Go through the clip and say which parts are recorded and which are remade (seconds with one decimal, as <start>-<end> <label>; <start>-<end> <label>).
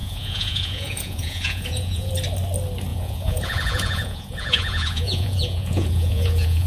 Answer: 0.0-2.1 remade; 2.1-2.9 recorded; 2.9-6.7 remade